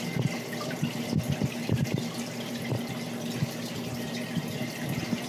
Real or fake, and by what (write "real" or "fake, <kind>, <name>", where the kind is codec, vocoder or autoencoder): fake, vocoder, BigVGAN v2